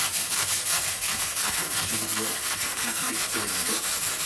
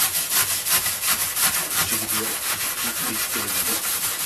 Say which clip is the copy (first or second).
first